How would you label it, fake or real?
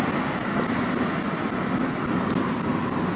real